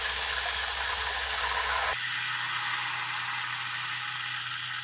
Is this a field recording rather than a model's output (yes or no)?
yes